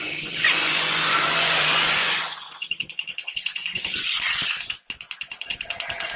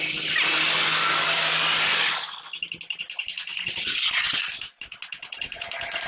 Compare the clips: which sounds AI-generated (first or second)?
first